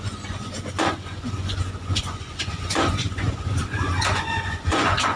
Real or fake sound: fake